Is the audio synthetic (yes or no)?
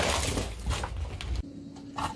no